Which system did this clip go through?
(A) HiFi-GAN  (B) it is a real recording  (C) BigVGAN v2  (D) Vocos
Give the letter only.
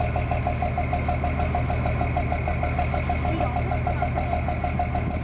B